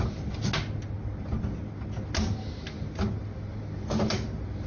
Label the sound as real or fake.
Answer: real